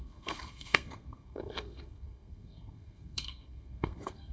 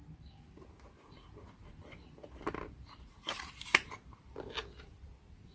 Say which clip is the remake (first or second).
first